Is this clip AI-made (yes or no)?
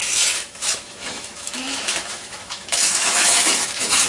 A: yes